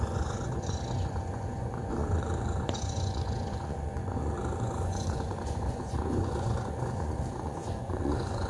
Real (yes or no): no